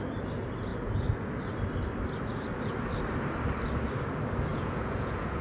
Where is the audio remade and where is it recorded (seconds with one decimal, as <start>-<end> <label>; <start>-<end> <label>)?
0.0-4.5 recorded; 4.5-5.4 remade